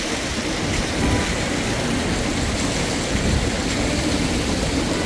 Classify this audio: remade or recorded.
recorded